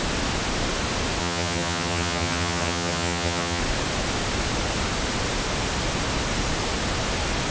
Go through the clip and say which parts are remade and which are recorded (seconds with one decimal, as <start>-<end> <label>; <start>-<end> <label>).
0.0-1.2 recorded; 1.2-3.6 remade; 3.6-7.5 recorded